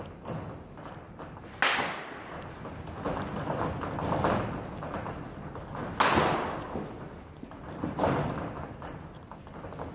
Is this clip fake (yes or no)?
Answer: no